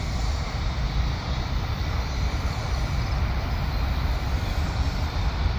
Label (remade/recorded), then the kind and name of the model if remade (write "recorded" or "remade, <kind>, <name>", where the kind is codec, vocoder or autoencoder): remade, vocoder, BigVGAN v2